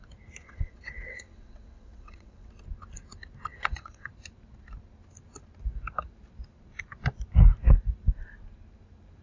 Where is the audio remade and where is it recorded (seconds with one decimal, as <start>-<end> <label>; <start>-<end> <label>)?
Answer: 0.0-0.4 recorded; 0.4-2.5 remade; 2.5-3.5 recorded; 3.5-4.1 remade; 4.1-9.2 recorded